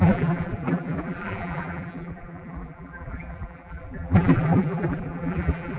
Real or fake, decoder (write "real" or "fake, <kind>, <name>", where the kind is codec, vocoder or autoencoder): fake, vocoder, BigVGAN v2